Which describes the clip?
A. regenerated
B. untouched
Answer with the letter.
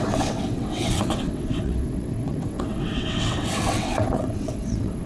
A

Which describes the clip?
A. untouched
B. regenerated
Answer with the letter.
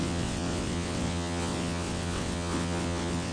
B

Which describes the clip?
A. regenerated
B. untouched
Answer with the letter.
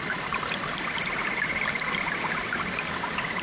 B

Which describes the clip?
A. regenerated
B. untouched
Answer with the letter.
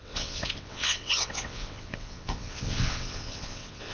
A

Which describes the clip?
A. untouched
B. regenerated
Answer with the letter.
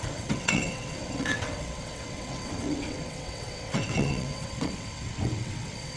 B